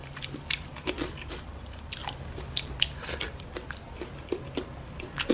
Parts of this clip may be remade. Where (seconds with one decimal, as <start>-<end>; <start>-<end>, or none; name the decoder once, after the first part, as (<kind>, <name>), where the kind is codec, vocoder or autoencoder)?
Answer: 0.0-2.0 (vocoder, BigVGAN v2)